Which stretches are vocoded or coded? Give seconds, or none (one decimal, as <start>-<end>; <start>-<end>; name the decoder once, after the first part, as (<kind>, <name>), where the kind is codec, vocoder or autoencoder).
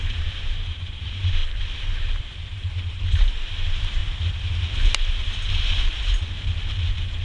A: 0.0-1.4 (vocoder, BigVGAN v2); 2.2-4.0